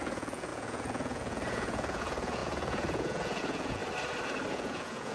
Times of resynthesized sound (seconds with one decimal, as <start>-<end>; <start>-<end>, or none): 0.0-3.8; 4.5-5.1

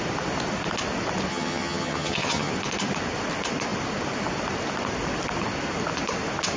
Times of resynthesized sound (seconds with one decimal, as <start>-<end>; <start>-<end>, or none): 1.3-2.5

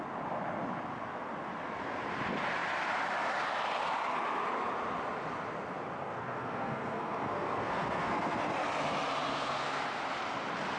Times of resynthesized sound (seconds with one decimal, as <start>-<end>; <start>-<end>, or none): 6.0-8.4; 9.3-9.8

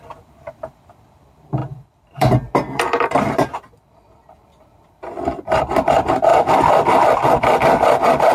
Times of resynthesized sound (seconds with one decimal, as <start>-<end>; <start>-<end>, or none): 0.0-8.3

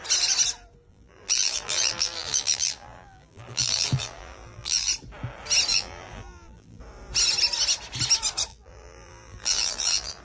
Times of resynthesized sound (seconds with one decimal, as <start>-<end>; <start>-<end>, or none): 0.9-4.9; 5.7-6.8; 8.5-10.2

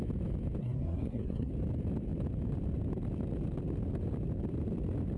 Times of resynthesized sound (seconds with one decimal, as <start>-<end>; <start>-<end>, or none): 0.6-1.5